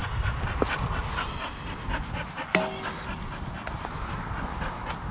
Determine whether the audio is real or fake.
real